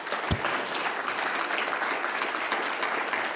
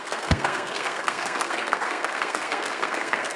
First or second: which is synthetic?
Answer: second